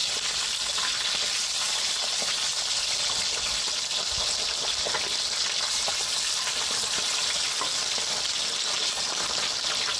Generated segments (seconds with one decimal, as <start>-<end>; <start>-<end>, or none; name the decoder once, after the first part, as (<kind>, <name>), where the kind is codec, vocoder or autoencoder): none